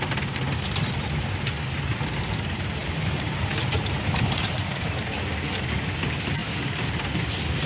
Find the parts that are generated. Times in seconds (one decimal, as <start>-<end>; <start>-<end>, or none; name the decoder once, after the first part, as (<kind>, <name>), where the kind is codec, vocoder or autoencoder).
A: 2.8-5.0 (vocoder, BigVGAN v2)